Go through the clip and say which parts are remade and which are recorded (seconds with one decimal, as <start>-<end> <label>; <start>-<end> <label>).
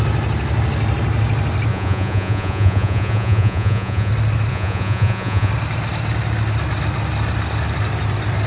0.0-1.7 recorded; 1.7-4.1 remade; 4.1-4.5 recorded; 4.5-5.5 remade; 5.5-8.5 recorded